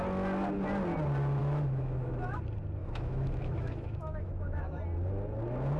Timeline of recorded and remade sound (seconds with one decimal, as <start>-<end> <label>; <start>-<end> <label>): 0.0-1.4 recorded; 1.4-2.4 remade; 2.4-2.8 recorded; 2.8-4.8 remade; 4.8-5.8 recorded